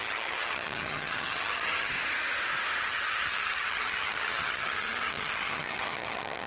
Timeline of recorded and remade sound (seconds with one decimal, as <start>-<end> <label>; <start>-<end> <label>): 0.0-1.9 remade; 1.9-2.8 recorded; 2.8-6.5 remade